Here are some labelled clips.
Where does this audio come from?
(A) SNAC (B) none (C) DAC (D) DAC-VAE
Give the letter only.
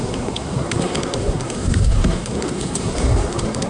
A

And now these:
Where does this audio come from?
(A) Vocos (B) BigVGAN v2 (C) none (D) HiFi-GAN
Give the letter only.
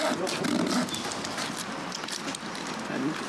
C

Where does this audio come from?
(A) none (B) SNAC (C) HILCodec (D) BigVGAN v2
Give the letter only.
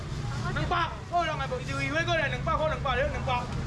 A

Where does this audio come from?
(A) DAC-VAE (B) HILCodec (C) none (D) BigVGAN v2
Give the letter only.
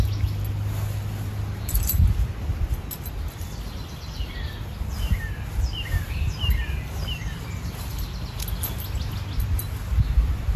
C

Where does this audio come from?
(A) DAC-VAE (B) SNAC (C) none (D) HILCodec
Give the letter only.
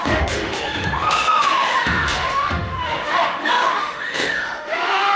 A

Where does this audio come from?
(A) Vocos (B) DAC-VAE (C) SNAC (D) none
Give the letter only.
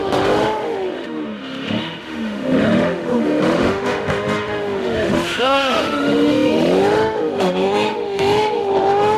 B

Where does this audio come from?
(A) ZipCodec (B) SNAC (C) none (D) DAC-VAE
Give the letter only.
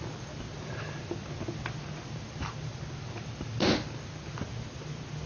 C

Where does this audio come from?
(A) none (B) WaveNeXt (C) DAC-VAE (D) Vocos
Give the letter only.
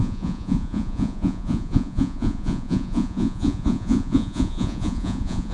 D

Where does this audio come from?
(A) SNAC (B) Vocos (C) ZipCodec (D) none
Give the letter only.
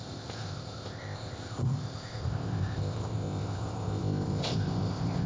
C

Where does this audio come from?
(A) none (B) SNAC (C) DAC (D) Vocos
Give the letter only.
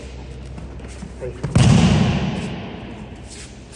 A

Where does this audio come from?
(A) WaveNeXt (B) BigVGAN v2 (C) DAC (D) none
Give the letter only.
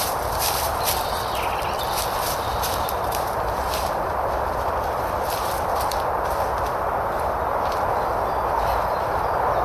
B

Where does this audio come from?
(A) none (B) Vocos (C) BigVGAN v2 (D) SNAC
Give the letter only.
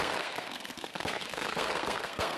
D